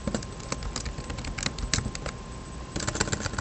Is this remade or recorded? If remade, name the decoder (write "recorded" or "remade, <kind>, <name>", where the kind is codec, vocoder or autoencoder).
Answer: recorded